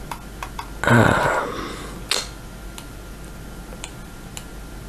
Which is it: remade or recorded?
recorded